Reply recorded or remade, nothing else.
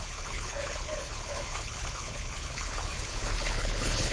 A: remade